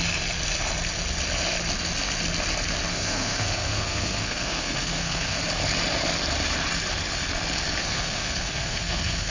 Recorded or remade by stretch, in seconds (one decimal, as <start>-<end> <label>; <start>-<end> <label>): 0.0-2.9 recorded; 2.9-5.4 remade; 5.4-7.8 recorded; 7.8-9.3 remade